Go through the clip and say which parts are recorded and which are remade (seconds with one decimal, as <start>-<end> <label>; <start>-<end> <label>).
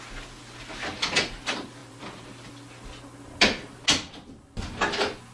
0.0-1.8 recorded; 1.8-2.5 remade; 2.5-5.3 recorded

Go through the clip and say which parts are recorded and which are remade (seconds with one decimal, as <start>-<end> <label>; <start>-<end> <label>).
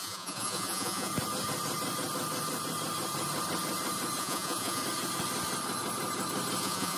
0.0-1.1 remade; 1.1-4.2 recorded; 4.2-4.8 remade; 4.8-6.6 recorded; 6.6-7.0 remade